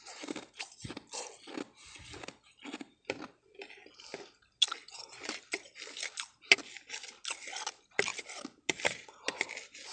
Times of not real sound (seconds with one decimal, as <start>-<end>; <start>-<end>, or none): none